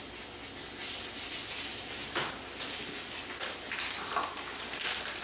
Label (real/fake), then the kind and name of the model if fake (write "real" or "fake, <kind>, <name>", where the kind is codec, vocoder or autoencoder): real